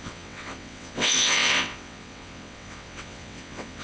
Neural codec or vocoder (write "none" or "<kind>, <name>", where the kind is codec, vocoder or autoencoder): vocoder, WaveNeXt